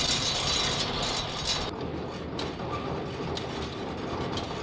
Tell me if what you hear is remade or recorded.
recorded